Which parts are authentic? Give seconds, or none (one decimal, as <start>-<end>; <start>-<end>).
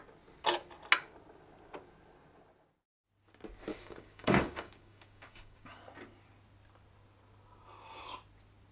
0.0-3.7; 5.8-8.7